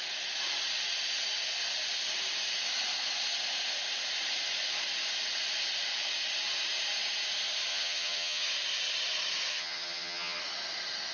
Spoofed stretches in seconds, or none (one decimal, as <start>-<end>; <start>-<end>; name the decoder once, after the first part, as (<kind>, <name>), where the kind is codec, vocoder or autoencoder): 7.7-8.5 (vocoder, HiFi-GAN); 9.5-10.4

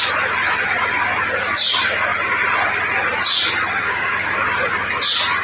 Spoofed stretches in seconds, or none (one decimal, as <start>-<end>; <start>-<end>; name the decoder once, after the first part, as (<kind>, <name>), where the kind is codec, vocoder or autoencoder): 3.8-4.4 (codec, DAC)

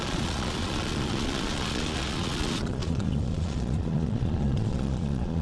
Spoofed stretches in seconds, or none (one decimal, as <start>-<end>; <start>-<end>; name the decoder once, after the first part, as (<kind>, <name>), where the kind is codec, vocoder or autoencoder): 0.0-5.4 (vocoder, Vocos)